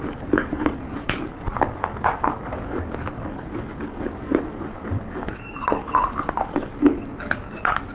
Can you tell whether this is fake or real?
fake